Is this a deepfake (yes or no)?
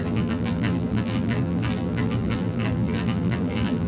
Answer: yes